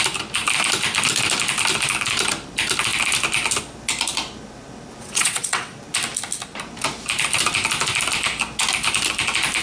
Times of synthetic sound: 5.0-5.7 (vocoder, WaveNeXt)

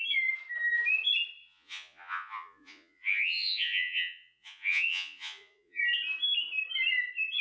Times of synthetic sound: 1.4-5.8 (vocoder, Vocos)

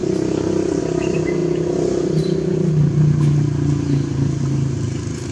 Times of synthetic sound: none